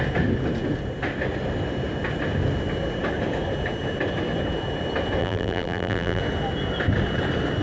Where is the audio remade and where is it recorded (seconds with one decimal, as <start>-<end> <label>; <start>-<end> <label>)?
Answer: 0.0-5.2 recorded; 5.2-6.2 remade; 6.2-7.6 recorded